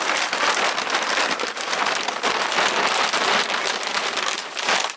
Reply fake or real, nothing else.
real